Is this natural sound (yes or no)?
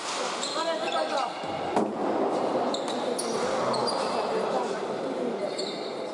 yes